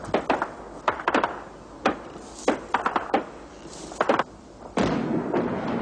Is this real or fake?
real